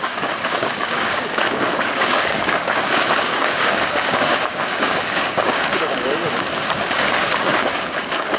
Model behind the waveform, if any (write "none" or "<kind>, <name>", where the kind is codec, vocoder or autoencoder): codec, DAC